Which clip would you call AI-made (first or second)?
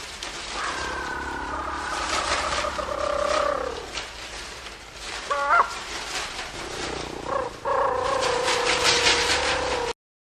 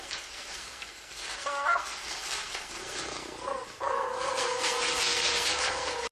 second